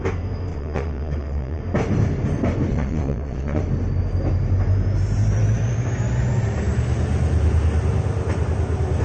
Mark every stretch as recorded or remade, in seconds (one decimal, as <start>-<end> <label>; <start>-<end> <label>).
0.0-0.5 recorded; 0.5-1.6 remade; 1.6-2.7 recorded; 2.7-3.6 remade; 3.6-9.0 recorded